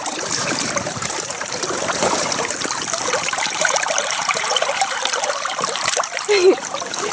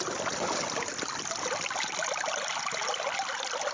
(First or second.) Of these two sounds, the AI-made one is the first